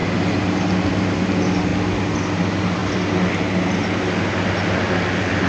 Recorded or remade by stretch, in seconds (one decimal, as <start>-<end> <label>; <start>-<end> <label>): 0.0-5.5 recorded